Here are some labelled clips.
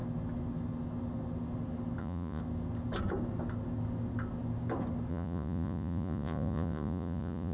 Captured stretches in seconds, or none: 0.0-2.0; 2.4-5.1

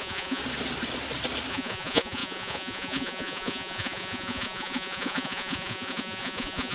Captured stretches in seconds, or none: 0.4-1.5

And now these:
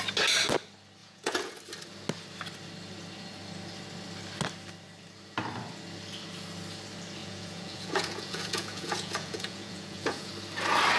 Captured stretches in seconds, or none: 0.0-1.0; 1.6-7.2; 10.3-11.0

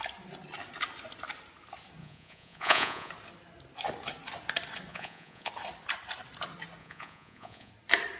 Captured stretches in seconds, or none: 0.0-2.0; 3.1-4.9; 5.5-6.8; 7.7-8.2

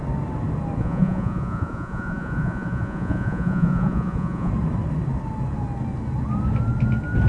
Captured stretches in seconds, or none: 0.0-0.8; 4.5-7.3